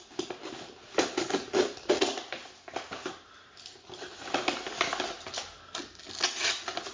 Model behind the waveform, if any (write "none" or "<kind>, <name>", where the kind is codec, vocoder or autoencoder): none